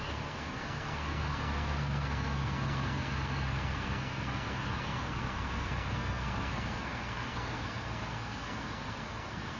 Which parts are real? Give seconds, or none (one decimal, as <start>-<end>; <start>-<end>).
none